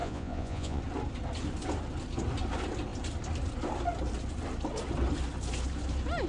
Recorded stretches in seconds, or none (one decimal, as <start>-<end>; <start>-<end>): 0.8-6.3